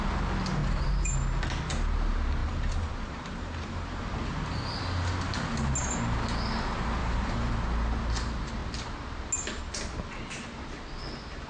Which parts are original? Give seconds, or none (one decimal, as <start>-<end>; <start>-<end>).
0.0-0.6; 1.1-2.4; 4.0-7.0; 7.5-11.5